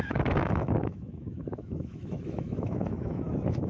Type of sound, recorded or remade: remade